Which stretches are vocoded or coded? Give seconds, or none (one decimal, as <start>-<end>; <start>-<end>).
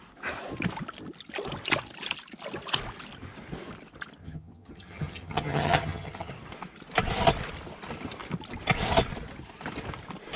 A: 4.2-6.3